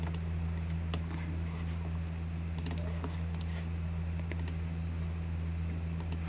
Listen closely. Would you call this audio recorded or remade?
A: recorded